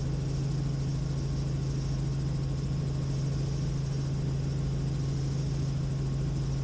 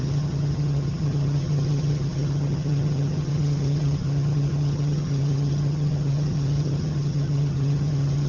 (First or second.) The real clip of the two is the first